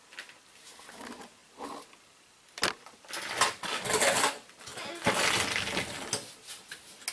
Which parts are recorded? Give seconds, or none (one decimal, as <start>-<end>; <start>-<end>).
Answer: 0.0-7.1